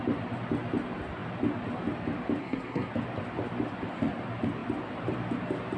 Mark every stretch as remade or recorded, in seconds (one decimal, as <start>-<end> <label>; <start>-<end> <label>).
0.0-2.4 recorded; 2.4-2.9 remade; 2.9-5.8 recorded